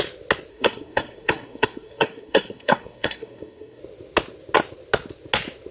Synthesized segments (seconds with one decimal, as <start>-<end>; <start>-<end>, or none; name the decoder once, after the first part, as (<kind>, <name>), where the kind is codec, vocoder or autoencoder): 0.5-3.8 (codec, SNAC)